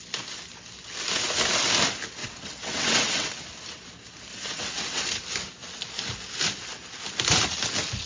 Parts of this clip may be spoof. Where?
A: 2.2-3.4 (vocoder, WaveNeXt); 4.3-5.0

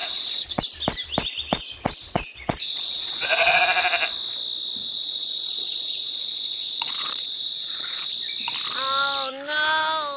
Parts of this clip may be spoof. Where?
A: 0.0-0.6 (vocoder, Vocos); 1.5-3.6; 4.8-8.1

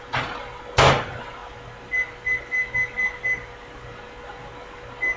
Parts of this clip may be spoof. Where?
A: none